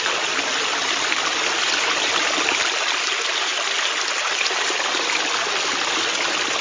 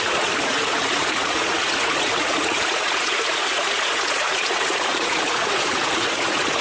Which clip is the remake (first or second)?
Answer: second